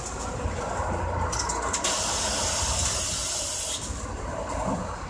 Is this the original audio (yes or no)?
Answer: yes